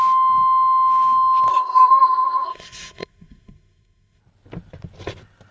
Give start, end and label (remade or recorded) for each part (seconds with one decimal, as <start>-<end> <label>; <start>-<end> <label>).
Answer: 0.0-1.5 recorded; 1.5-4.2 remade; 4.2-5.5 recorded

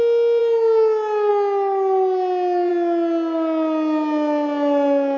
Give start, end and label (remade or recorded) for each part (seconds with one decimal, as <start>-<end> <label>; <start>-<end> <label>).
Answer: 0.0-5.2 recorded

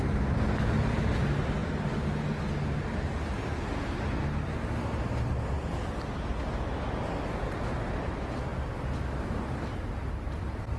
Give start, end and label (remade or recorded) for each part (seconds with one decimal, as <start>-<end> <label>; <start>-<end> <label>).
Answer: 0.0-10.8 recorded

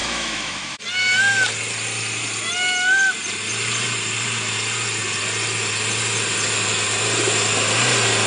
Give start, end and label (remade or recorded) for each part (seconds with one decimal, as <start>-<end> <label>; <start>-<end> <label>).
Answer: 0.0-0.8 remade; 0.8-8.3 recorded